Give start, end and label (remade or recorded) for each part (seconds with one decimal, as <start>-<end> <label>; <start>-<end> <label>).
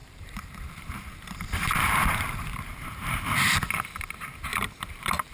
0.0-3.2 remade; 3.2-4.5 recorded; 4.5-5.3 remade